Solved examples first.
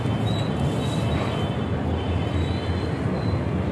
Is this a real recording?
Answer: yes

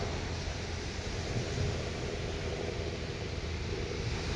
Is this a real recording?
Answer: yes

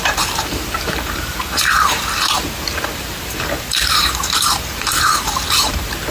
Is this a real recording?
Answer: no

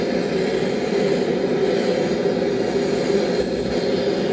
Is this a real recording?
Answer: yes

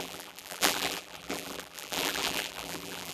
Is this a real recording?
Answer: no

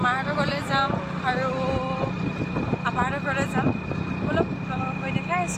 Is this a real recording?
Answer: yes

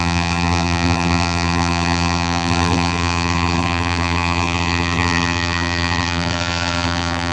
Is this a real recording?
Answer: no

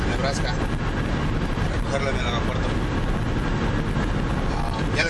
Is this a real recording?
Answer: yes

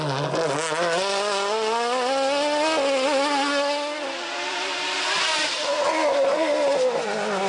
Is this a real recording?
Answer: yes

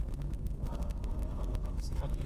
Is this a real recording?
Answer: no